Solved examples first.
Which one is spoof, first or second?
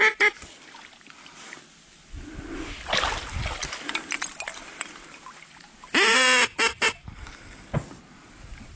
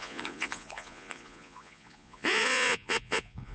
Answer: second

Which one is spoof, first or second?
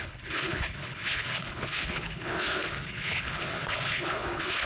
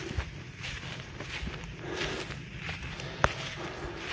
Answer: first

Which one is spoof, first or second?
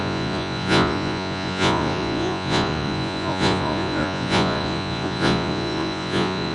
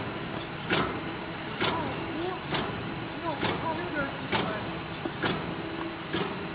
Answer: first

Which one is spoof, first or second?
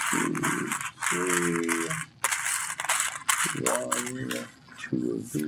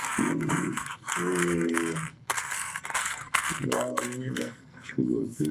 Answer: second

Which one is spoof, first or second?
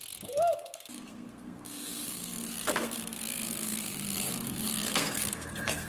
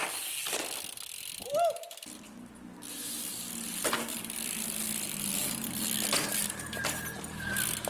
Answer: first